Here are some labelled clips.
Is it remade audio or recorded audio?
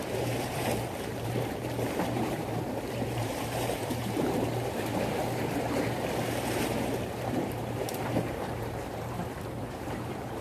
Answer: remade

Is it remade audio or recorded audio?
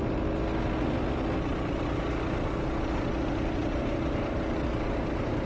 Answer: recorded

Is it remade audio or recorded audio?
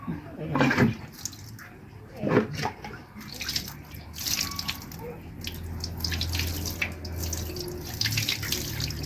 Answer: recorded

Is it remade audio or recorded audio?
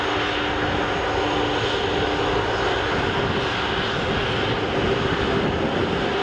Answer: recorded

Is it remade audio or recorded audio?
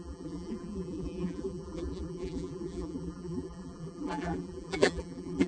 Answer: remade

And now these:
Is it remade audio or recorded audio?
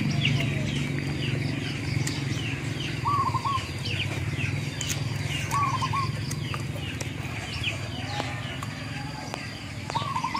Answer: recorded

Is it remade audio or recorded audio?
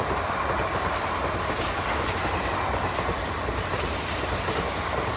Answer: recorded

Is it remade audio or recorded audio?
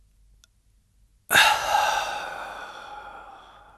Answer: recorded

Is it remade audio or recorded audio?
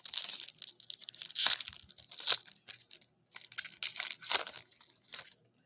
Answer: recorded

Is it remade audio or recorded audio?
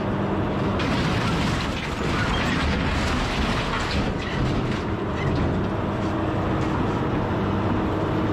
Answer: recorded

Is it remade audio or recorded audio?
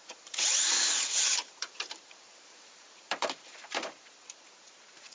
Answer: remade